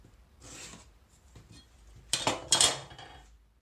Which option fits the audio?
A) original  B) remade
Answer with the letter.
A